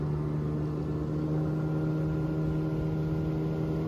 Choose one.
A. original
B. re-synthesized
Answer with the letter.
A